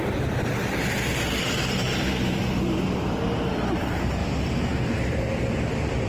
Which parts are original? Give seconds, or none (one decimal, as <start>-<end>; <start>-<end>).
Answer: 0.0-1.8; 2.6-4.2; 4.7-6.1